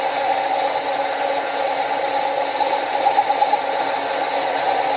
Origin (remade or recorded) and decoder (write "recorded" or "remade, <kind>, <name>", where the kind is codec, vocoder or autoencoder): recorded